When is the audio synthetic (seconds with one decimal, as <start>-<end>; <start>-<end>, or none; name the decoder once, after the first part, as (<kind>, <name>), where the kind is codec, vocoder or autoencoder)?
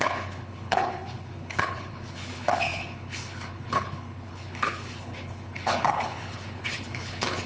0.0-7.5 (codec, HILCodec)